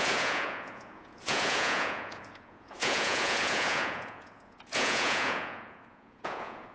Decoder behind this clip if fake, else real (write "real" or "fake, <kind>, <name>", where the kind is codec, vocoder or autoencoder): fake, vocoder, Vocos